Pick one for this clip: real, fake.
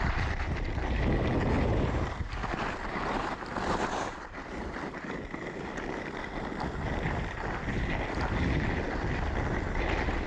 real